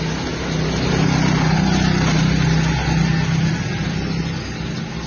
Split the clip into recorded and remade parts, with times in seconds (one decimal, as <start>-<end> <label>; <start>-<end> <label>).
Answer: 0.0-5.1 recorded